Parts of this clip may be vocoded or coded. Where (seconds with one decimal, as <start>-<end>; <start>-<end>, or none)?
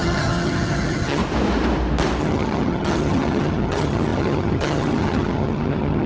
0.0-1.2; 2.2-6.1